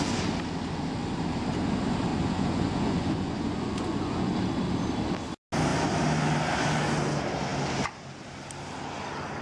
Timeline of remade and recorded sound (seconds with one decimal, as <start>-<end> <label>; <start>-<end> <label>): 0.0-2.1 recorded; 2.1-4.3 remade; 4.3-9.4 recorded